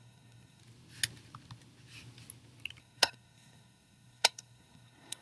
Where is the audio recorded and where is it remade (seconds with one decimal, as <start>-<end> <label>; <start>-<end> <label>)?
0.0-0.6 remade; 0.6-2.8 recorded; 2.8-5.2 remade